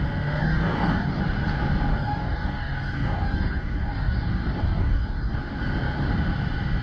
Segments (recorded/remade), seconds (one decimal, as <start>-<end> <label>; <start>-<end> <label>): 0.0-0.4 recorded; 0.4-1.2 remade; 1.2-1.9 recorded; 1.9-5.4 remade; 5.4-6.8 recorded